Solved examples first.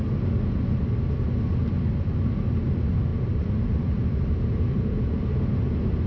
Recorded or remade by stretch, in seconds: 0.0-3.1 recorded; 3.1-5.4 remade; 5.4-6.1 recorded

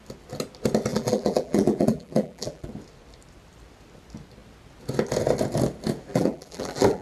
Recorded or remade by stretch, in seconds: 0.0-0.9 recorded; 0.9-2.7 remade; 2.7-6.1 recorded; 6.1-7.0 remade

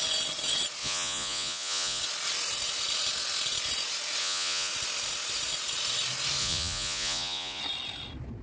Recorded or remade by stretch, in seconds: 0.0-0.8 recorded; 0.8-2.0 remade; 2.0-4.2 recorded; 4.2-4.7 remade; 4.7-6.4 recorded; 6.4-7.6 remade; 7.6-8.4 recorded

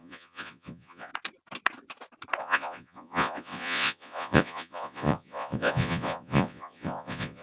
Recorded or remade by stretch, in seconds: 0.0-1.1 remade; 1.1-2.4 recorded; 2.4-7.4 remade

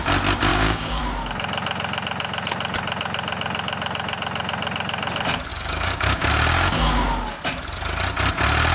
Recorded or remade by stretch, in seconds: 0.0-0.5 recorded; 0.5-1.0 remade; 1.0-5.5 recorded; 5.5-6.3 remade; 6.3-8.7 recorded

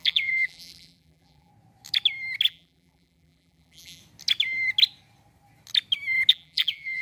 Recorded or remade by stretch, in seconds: 0.0-1.5 remade; 1.5-2.5 recorded; 2.5-4.0 remade; 4.0-6.3 recorded; 6.3-7.0 remade